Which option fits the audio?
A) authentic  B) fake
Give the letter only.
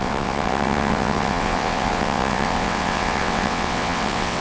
B